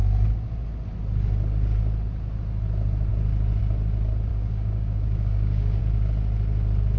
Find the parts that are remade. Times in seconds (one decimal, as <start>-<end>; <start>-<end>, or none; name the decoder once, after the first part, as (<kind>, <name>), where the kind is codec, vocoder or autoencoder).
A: 4.3-5.8 (codec, DAC)